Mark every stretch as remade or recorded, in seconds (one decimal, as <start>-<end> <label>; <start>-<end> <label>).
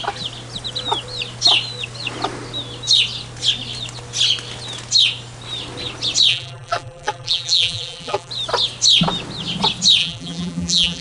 0.0-6.3 recorded; 6.3-8.3 remade; 8.3-10.0 recorded; 10.0-11.0 remade